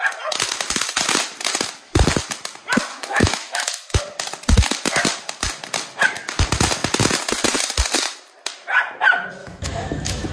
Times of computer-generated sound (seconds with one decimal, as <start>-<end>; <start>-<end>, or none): 2.9-4.0; 9.4-10.3